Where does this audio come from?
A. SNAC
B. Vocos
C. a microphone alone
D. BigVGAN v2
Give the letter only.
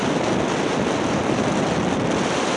C